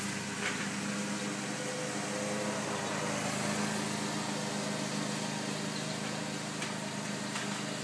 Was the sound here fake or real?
real